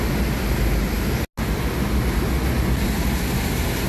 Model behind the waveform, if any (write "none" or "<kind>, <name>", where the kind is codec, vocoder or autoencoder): none